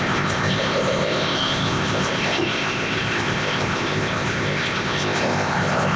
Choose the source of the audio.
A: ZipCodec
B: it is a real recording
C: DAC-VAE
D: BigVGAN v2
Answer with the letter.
A